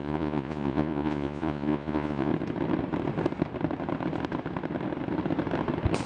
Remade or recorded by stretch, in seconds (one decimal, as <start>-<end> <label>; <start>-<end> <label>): 0.0-2.3 remade; 2.3-6.1 recorded